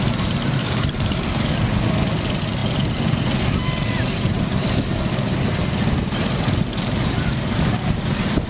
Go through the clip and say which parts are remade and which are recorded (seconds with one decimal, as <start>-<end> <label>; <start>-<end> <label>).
0.0-0.6 recorded; 0.6-1.6 remade; 1.6-6.7 recorded; 6.7-7.9 remade; 7.9-8.5 recorded